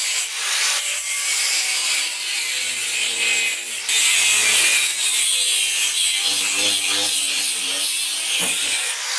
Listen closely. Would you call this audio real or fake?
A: fake